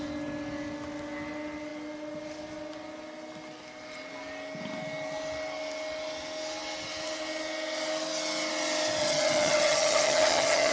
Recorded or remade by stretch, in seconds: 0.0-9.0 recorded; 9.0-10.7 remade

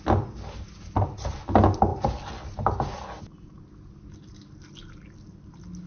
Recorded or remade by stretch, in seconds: 0.0-5.9 recorded

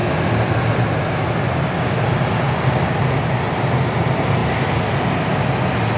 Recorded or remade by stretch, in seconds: 0.0-6.0 recorded

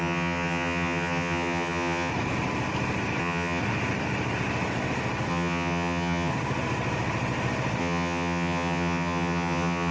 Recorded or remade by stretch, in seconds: 0.0-2.1 remade; 2.1-3.2 recorded; 3.2-3.6 remade; 3.6-5.3 recorded; 5.3-6.3 remade; 6.3-7.8 recorded; 7.8-9.9 remade

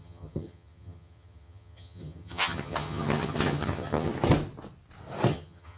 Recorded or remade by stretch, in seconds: 0.0-4.1 remade; 4.1-5.3 recorded; 5.3-5.8 remade